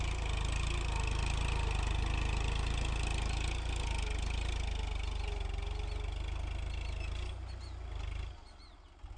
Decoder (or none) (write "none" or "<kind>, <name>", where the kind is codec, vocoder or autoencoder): none